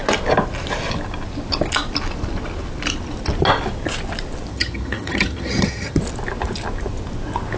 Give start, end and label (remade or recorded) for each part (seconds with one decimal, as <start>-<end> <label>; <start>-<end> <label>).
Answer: 0.0-4.5 recorded; 4.5-6.0 remade; 6.0-7.6 recorded